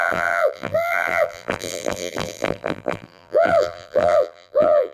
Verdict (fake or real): fake